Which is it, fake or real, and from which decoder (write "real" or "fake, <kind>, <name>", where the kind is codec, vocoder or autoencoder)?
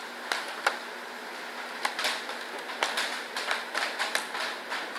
real